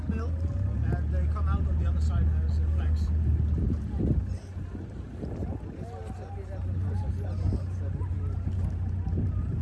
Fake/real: real